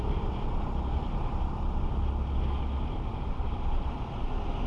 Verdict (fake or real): real